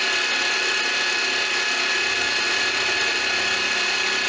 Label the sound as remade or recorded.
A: recorded